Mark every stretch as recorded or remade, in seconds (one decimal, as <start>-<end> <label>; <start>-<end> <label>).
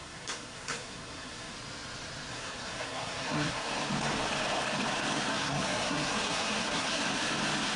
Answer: 0.0-1.5 remade; 1.5-2.3 recorded; 2.3-3.7 remade; 3.7-5.3 recorded; 5.3-7.0 remade; 7.0-7.8 recorded